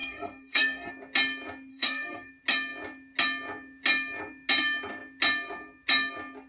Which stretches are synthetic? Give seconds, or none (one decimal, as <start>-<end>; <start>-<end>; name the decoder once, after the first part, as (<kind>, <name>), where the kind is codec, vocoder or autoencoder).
0.0-0.9 (codec, SNAC); 1.7-2.3